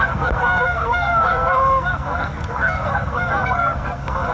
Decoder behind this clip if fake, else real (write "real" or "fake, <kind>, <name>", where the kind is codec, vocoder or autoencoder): fake, codec, SNAC